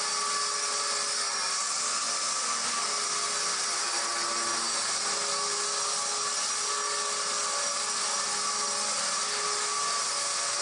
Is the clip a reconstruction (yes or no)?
no